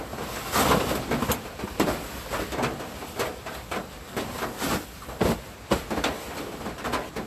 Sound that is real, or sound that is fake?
real